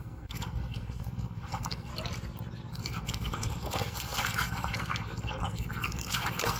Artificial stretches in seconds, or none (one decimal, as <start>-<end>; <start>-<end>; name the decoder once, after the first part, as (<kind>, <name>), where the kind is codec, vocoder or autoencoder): 0.0-1.9 (codec, SNAC); 2.7-6.6